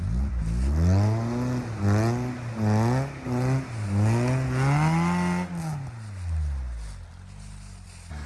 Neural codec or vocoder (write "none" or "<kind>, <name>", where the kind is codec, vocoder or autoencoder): none